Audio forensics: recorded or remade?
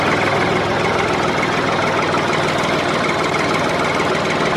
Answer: recorded